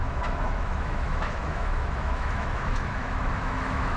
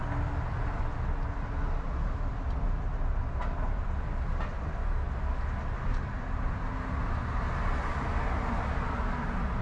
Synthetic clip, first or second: first